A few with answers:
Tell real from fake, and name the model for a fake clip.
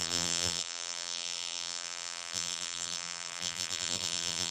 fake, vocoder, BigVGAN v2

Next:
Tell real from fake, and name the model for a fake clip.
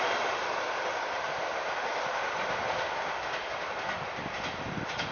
real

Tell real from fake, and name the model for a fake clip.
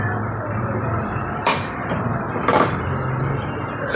fake, vocoder, BigVGAN v2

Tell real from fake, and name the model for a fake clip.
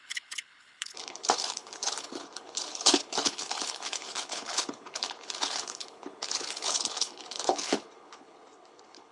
fake, codec, HILCodec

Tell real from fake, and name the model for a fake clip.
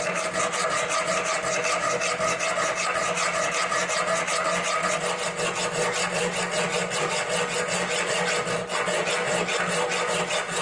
real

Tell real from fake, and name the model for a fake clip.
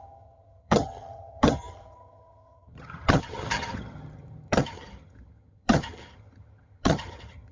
fake, vocoder, HiFi-GAN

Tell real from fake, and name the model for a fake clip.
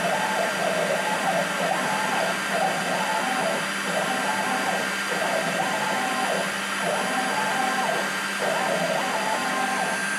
real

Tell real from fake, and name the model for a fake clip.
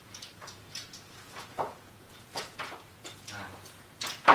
fake, vocoder, Vocos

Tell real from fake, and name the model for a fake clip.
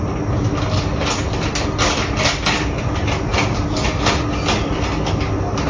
real